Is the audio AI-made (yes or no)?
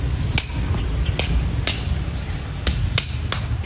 no